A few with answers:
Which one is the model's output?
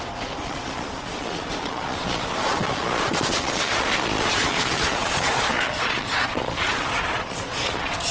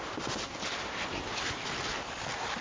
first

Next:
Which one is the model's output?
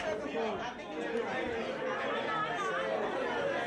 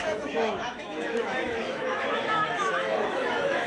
second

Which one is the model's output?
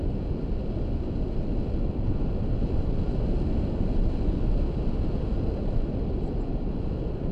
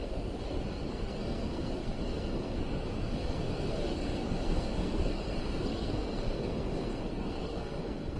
second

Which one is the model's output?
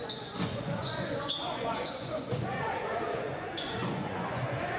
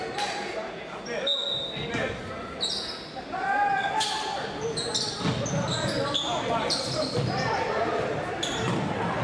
first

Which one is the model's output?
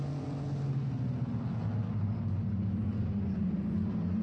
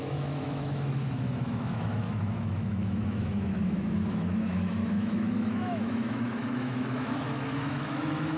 second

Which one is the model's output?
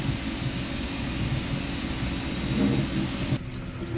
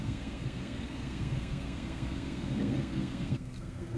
second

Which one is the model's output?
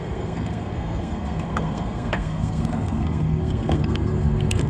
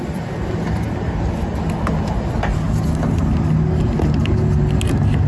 first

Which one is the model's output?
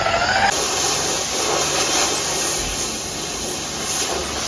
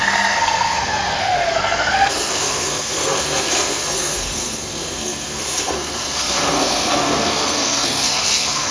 second